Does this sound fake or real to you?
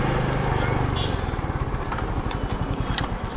real